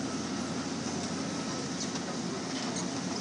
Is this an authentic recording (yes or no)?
yes